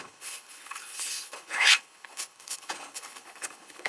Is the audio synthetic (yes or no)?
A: yes